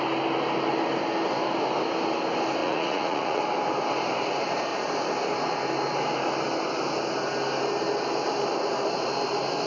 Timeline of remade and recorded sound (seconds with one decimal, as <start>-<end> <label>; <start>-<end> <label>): 0.0-2.6 recorded; 2.6-3.4 remade; 3.4-9.7 recorded